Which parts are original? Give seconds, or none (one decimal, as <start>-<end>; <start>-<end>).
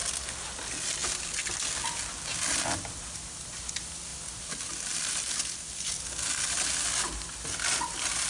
0.0-8.3